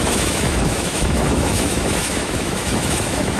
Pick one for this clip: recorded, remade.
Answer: remade